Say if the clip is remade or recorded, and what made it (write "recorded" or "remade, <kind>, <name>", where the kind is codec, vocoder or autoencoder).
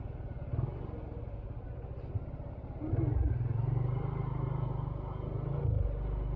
recorded